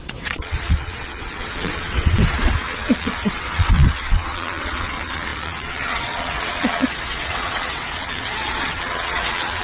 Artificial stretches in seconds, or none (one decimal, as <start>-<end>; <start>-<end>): 0.0-9.6